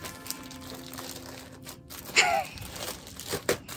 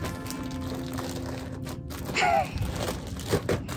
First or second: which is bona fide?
second